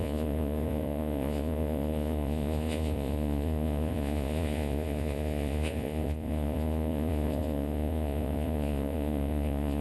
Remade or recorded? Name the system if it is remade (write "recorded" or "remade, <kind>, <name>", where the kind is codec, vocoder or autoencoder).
remade, vocoder, Vocos